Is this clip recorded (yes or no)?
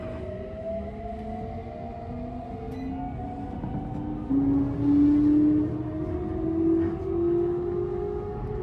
yes